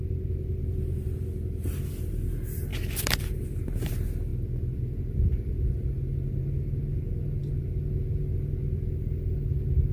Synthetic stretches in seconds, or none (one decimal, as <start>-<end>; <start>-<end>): none